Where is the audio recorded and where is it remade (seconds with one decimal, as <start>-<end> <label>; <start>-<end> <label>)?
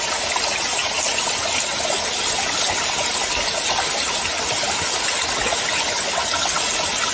0.0-7.1 recorded